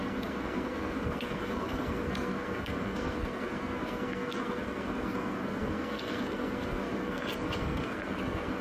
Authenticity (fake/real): fake